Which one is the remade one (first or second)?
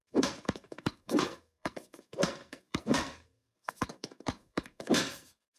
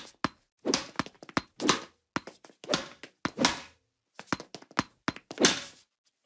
first